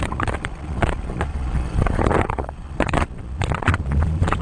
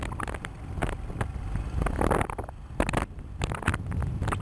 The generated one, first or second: first